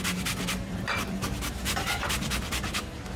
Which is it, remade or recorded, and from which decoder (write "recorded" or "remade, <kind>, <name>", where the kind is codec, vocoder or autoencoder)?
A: remade, vocoder, BigVGAN v2